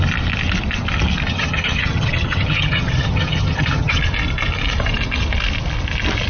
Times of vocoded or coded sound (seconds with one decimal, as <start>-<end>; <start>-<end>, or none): 1.3-4.0